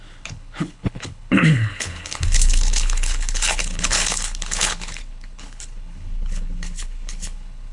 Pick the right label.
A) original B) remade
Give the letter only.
B